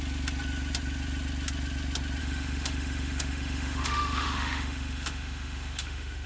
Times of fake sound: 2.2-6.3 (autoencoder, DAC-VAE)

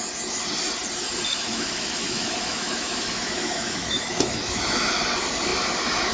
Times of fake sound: 1.3-5.0 (autoencoder, DAC-VAE)

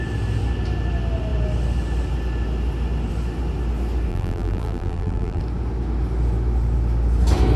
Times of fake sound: 4.1-5.4 (vocoder, BigVGAN v2)

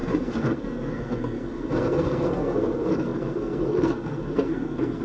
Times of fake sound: 0.0-5.0 (codec, SNAC)

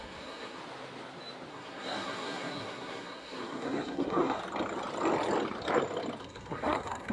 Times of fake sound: 0.0-0.6 (codec, SNAC); 1.5-4.4; 6.2-7.1

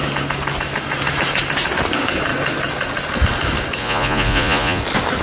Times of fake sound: 3.8-4.8 (vocoder, Vocos)

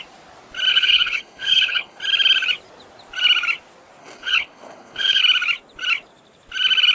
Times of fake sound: 0.7-2.0 (codec, HILCodec); 4.0-5.2

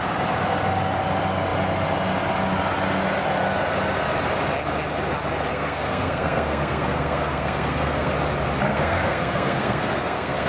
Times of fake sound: 5.5-8.1 (codec, SNAC); 8.7-10.5